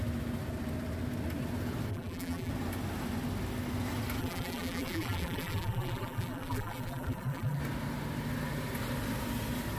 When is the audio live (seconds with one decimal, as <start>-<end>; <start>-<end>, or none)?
0.0-1.9; 2.5-4.2; 7.6-9.8